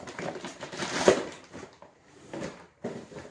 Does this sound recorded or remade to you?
remade